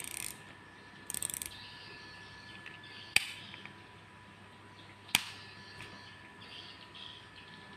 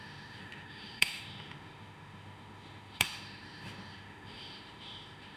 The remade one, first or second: second